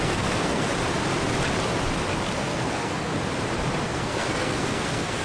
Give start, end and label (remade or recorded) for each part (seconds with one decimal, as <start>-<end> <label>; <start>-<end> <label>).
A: 0.0-0.7 remade; 0.7-2.4 recorded; 2.4-3.1 remade; 3.1-3.8 recorded; 3.8-5.2 remade